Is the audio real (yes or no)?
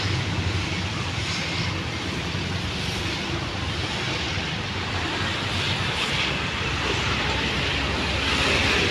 no